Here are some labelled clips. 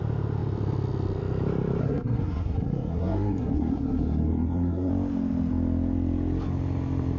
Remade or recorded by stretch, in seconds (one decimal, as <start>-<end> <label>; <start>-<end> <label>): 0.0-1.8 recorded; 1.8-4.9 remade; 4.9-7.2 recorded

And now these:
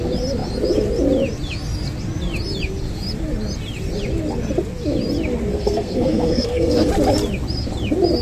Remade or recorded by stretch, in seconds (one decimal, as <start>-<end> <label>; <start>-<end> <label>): 0.0-5.5 recorded; 5.5-6.9 remade; 6.9-8.2 recorded

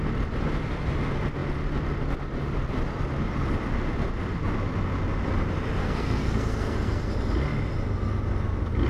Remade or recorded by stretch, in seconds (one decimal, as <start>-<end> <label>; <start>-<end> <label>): 0.0-5.8 recorded; 5.8-7.1 remade; 7.1-8.9 recorded